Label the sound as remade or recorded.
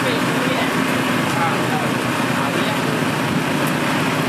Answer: recorded